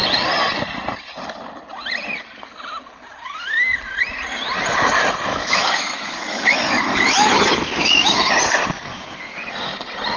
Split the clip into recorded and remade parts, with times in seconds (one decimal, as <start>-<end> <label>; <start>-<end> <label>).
0.0-5.3 recorded; 5.3-8.3 remade; 8.3-8.9 recorded; 8.9-9.5 remade; 9.5-10.2 recorded